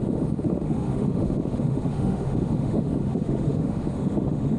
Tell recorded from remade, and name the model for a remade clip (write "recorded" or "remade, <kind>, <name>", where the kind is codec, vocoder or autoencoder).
remade, autoencoder, DAC-VAE